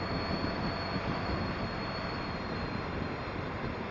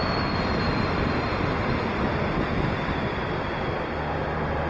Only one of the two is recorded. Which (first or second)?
second